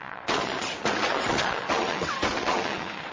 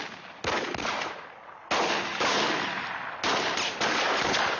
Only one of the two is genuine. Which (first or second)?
second